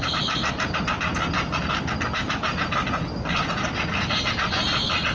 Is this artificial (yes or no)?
no